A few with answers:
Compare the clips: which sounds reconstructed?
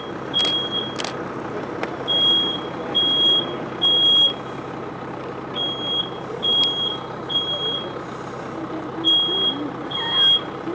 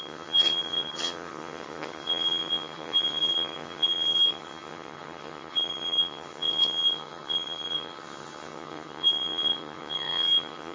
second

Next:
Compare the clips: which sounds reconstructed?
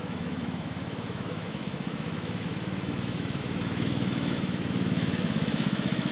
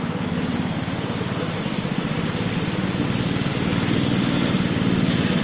first